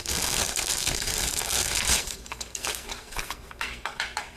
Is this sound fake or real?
fake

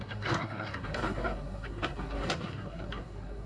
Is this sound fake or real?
fake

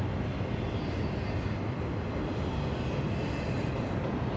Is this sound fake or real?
real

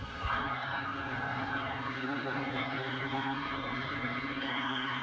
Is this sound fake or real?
fake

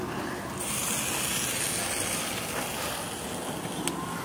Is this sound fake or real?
real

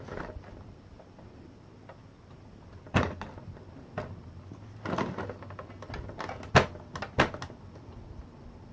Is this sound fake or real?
real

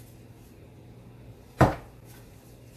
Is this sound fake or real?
real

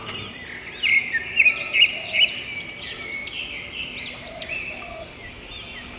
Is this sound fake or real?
real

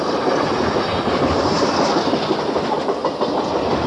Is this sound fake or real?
real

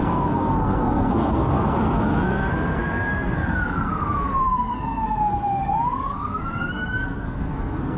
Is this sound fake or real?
fake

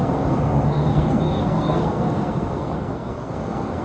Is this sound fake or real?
fake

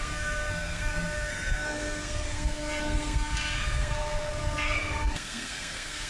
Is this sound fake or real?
fake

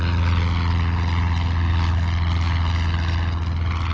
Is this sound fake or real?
real